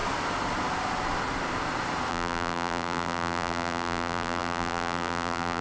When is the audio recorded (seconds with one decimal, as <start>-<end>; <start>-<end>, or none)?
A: 0.0-2.1